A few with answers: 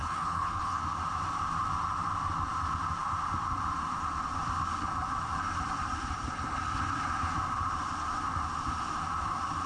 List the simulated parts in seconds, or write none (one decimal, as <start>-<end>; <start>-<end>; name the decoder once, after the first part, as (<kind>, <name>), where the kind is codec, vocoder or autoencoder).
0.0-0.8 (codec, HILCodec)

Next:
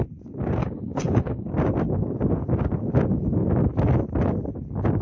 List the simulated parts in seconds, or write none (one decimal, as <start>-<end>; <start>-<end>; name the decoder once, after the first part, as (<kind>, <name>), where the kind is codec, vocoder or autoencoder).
0.6-1.5 (codec, HILCodec)

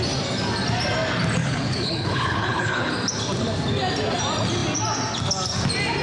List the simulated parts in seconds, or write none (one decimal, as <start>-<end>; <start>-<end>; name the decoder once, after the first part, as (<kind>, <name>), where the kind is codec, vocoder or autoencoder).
1.4-2.9 (codec, HILCodec)

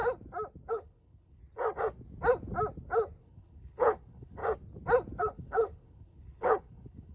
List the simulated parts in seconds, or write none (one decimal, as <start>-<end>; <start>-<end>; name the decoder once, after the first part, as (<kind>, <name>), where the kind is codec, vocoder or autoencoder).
0.7-1.4 (codec, HILCodec); 3.2-4.4; 5.2-7.1